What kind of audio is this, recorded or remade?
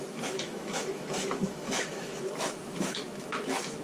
remade